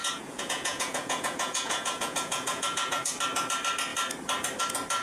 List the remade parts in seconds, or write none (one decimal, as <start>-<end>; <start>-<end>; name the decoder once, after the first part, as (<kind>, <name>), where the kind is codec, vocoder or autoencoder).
0.0-3.0 (vocoder, Vocos)